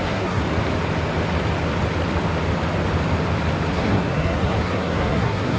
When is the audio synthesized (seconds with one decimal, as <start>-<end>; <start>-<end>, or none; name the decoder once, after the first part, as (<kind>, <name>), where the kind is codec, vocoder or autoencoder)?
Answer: 0.0-0.4 (codec, SNAC); 3.7-5.6

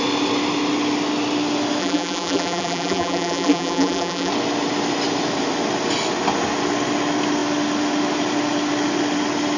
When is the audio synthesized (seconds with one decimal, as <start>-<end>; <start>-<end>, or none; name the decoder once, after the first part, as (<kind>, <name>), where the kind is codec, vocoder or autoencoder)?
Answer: 1.8-4.3 (vocoder, BigVGAN v2)

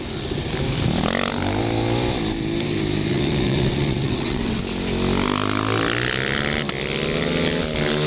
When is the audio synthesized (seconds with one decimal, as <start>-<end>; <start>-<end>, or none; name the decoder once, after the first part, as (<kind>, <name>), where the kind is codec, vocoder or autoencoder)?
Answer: 3.1-4.6 (vocoder, WaveNeXt)